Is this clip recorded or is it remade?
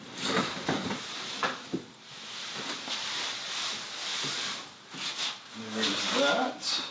recorded